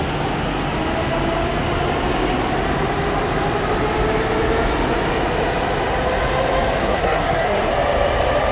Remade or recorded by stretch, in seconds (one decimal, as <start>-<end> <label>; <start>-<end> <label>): 0.0-6.8 recorded; 6.8-7.7 remade; 7.7-8.5 recorded

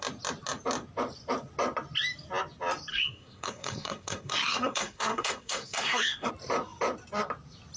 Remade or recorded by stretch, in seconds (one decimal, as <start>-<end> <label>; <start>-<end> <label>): 0.0-2.9 recorded; 2.9-6.3 remade; 6.3-7.8 recorded